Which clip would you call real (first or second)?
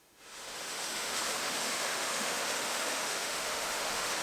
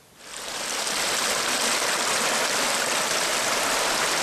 second